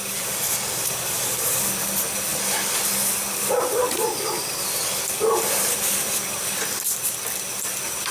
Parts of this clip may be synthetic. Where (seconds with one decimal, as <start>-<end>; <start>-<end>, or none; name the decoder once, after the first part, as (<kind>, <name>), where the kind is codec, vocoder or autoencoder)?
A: none